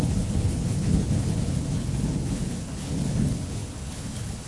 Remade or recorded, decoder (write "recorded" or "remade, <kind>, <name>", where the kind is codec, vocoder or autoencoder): remade, codec, HILCodec